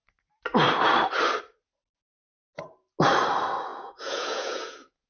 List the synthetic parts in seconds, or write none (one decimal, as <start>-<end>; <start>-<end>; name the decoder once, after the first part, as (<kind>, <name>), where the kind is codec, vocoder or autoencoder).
3.7-5.1 (vocoder, Vocos)